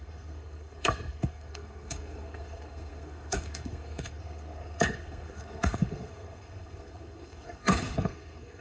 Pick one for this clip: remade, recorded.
remade